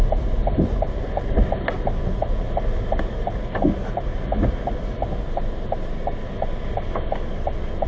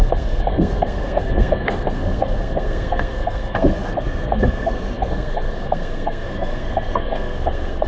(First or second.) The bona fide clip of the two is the first